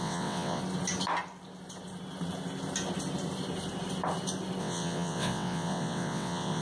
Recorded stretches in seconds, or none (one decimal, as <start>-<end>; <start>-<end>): 0.6-4.6